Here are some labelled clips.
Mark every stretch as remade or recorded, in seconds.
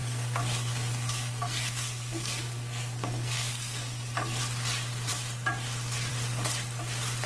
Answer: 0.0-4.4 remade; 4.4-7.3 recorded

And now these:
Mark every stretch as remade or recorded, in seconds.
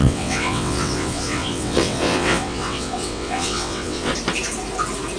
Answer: 0.0-4.1 remade; 4.1-5.2 recorded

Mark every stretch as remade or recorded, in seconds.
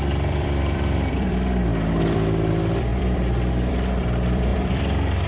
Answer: 0.0-5.3 remade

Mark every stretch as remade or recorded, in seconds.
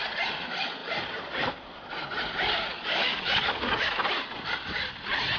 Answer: 0.0-2.7 recorded; 2.7-3.9 remade; 3.9-5.4 recorded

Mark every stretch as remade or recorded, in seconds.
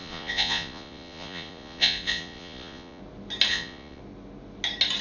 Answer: 0.0-3.0 remade; 3.0-3.5 recorded; 3.5-4.0 remade; 4.0-5.0 recorded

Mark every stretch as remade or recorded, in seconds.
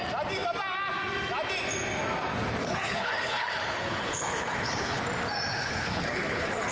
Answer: 0.0-2.6 recorded; 2.6-5.0 remade; 5.0-5.5 recorded; 5.5-6.7 remade